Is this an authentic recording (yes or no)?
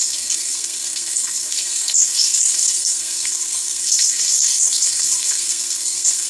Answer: no